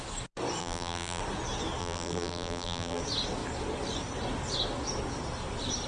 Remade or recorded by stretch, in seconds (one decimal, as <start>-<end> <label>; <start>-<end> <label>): 0.0-0.6 recorded; 0.6-1.2 remade; 1.2-1.8 recorded; 1.8-3.0 remade; 3.0-5.9 recorded